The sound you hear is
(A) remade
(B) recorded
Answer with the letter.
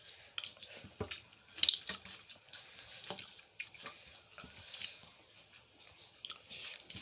B